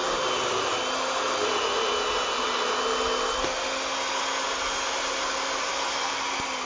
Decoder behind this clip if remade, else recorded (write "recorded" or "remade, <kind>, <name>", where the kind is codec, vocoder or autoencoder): recorded